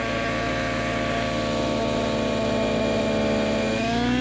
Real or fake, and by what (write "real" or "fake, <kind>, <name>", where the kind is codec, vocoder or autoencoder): real